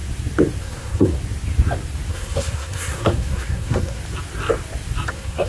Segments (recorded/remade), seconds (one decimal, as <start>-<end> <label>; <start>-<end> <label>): 0.0-0.6 recorded; 0.6-1.2 remade; 1.2-2.1 recorded; 2.1-4.0 remade; 4.0-5.1 recorded; 5.1-5.5 remade